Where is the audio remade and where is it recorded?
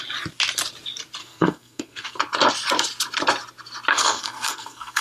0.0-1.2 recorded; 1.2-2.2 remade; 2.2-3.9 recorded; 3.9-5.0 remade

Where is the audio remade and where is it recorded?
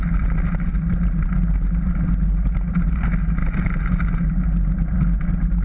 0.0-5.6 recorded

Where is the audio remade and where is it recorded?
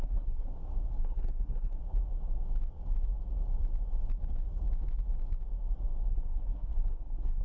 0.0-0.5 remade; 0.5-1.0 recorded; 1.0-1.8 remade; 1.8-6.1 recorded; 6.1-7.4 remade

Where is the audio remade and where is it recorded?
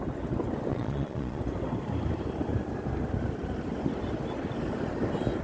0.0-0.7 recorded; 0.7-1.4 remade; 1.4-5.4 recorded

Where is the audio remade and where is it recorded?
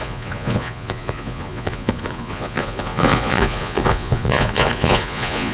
0.0-5.5 remade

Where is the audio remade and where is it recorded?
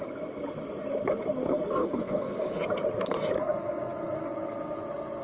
0.0-1.8 recorded; 1.8-2.6 remade; 2.6-5.2 recorded